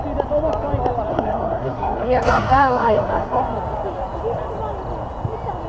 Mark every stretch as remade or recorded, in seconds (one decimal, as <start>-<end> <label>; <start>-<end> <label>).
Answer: 0.0-1.1 recorded; 1.1-3.4 remade; 3.4-5.7 recorded